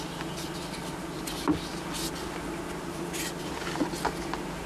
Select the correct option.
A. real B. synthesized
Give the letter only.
A